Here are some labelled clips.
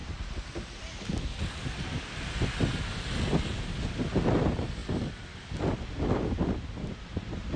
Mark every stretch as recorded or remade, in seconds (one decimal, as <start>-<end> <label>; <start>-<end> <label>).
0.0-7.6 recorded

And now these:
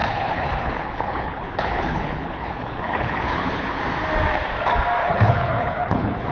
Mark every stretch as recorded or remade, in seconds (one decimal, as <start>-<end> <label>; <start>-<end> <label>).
0.0-3.8 remade; 3.8-5.0 recorded; 5.0-6.3 remade

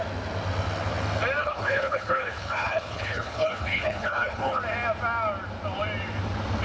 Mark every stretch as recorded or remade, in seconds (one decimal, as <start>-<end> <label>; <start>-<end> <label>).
0.0-1.4 recorded; 1.4-4.6 remade; 4.6-6.6 recorded